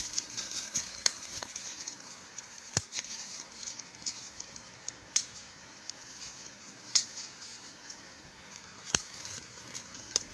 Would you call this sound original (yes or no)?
no